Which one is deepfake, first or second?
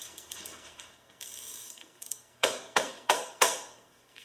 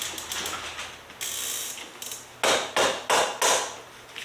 first